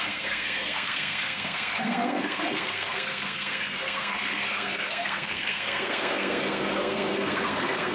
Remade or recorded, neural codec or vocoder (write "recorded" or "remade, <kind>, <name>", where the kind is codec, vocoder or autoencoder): remade, codec, SNAC